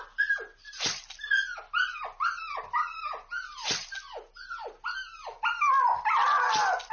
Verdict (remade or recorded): recorded